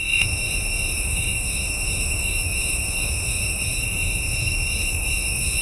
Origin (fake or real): fake